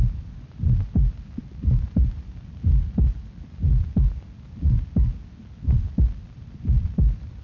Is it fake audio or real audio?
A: real